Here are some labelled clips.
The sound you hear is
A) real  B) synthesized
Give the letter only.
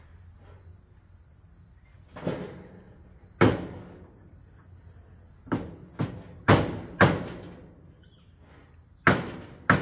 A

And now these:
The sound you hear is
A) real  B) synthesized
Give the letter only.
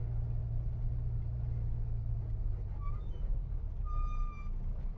A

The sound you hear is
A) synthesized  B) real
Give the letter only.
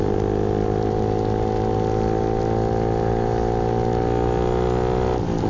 B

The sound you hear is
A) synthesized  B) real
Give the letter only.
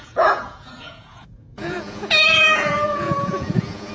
A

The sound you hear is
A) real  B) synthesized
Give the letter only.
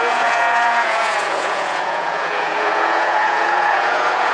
B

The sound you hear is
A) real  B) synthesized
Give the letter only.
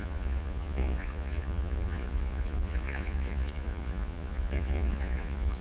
B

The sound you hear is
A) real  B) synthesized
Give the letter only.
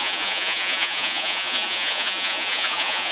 B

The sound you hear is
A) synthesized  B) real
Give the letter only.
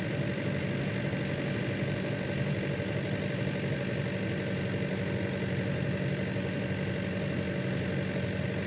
B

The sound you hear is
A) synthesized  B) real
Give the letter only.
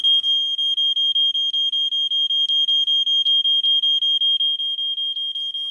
B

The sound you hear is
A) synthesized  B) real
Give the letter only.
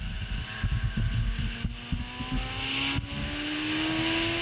B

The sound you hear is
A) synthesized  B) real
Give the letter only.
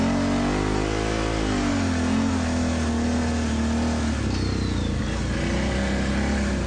B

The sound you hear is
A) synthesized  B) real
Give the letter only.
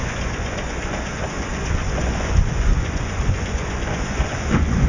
A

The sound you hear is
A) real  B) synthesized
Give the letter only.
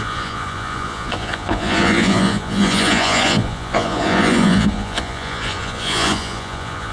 B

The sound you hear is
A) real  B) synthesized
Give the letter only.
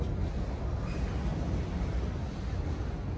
A